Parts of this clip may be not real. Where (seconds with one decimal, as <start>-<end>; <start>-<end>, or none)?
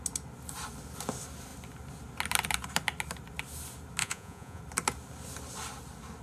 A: 4.0-4.6